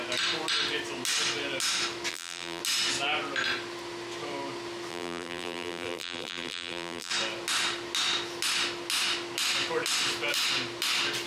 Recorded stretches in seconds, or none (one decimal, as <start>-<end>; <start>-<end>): 0.0-2.1; 2.6-4.9; 7.1-11.3